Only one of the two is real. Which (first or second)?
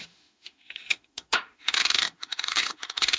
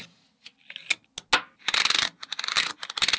second